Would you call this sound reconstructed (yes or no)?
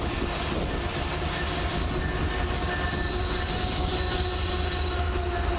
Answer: no